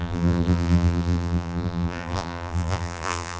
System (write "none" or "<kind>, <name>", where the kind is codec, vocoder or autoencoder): vocoder, BigVGAN v2